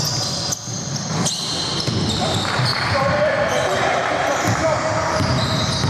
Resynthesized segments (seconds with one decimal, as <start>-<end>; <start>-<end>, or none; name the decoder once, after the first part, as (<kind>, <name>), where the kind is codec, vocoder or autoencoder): 2.7-5.3 (vocoder, BigVGAN v2)